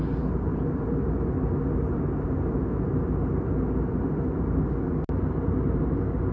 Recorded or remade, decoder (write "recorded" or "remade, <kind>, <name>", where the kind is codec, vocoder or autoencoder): recorded